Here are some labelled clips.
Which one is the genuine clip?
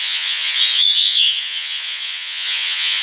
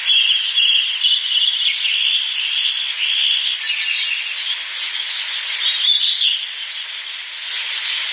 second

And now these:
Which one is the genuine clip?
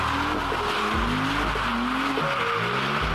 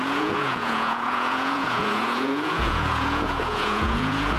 first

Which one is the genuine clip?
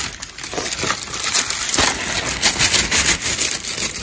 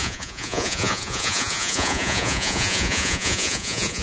first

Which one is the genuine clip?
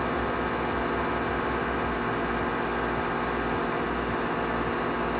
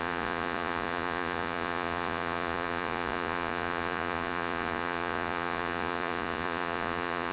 first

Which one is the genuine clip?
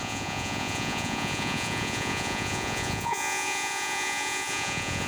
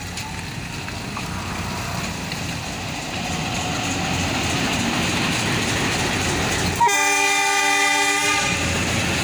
second